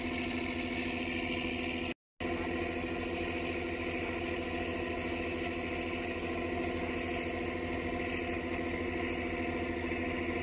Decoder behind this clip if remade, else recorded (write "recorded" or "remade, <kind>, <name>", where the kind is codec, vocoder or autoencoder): recorded